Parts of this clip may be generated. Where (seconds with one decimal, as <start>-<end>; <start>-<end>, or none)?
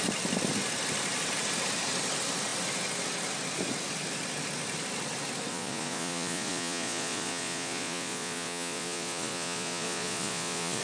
5.5-10.8